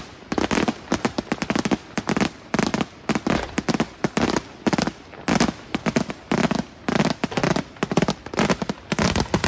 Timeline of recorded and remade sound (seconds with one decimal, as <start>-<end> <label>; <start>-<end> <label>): 0.0-9.5 recorded